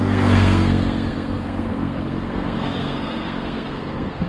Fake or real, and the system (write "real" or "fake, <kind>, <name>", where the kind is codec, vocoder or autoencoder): fake, codec, SNAC